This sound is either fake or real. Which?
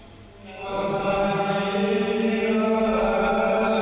real